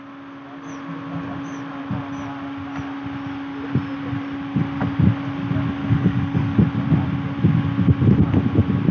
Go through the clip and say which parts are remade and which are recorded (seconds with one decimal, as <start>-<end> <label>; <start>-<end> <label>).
0.0-5.8 recorded; 5.8-6.6 remade; 6.6-8.9 recorded